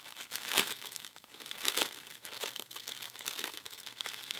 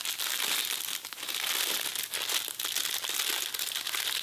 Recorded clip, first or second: second